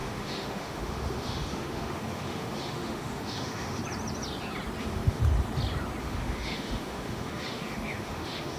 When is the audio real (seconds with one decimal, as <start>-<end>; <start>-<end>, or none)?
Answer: 3.8-4.8; 5.2-6.0